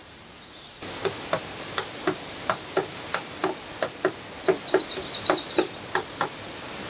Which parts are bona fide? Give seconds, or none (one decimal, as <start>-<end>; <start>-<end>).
2.9-6.9